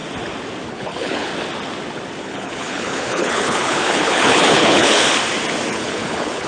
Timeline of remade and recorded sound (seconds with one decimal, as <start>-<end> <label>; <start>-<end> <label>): 0.0-0.7 recorded; 0.7-1.3 remade; 1.3-2.2 recorded; 2.2-5.0 remade; 5.0-5.7 recorded; 5.7-6.5 remade